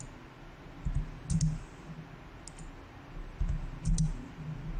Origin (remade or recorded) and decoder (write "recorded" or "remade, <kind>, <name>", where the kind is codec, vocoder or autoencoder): recorded